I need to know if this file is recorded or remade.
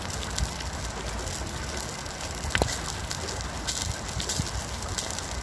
recorded